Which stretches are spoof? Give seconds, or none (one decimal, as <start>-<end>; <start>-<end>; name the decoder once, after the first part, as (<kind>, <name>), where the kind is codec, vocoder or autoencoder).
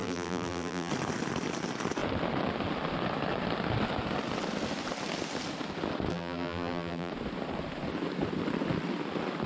0.0-0.9 (vocoder, BigVGAN v2); 6.1-7.1